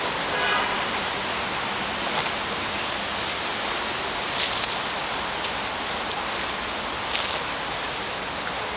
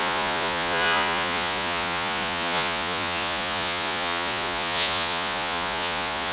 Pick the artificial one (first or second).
second